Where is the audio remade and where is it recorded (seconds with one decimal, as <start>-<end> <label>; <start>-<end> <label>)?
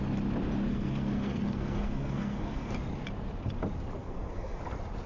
0.0-0.7 recorded; 0.7-2.7 remade; 2.7-4.0 recorded; 4.0-4.6 remade; 4.6-5.1 recorded